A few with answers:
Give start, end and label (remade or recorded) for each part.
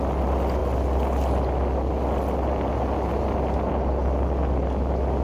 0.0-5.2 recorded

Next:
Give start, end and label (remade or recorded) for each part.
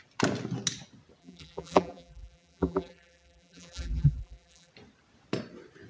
0.0-1.2 recorded; 1.2-4.7 remade; 4.7-5.9 recorded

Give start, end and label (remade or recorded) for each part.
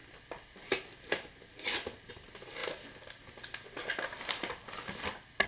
0.0-5.5 recorded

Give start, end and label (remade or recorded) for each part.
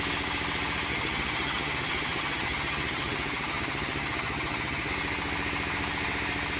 0.0-0.9 recorded; 0.9-4.9 remade; 4.9-6.6 recorded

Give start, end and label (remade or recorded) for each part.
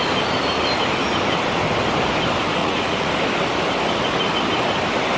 0.0-2.6 recorded; 2.6-3.1 remade; 3.1-5.2 recorded